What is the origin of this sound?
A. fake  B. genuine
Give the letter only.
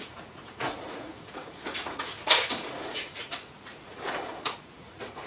A